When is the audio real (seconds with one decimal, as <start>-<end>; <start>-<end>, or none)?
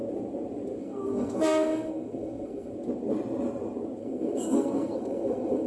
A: 0.0-0.8; 2.7-4.0